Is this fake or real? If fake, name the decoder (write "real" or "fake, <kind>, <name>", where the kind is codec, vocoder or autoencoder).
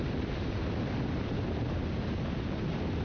real